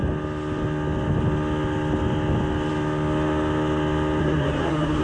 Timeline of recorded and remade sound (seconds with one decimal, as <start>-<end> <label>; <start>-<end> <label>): 0.0-4.2 recorded; 4.2-5.0 remade